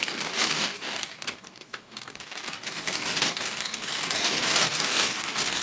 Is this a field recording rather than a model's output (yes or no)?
no